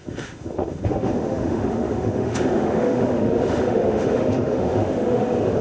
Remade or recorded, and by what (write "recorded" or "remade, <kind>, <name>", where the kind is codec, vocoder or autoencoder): remade, autoencoder, DAC-VAE